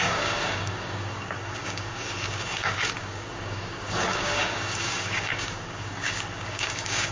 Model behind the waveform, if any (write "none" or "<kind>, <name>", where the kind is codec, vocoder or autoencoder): codec, DAC